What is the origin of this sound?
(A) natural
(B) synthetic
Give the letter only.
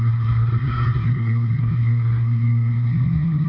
B